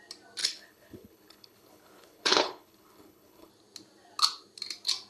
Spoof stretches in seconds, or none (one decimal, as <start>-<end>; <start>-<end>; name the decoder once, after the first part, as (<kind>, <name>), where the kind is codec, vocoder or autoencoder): 0.4-3.5 (codec, HILCodec)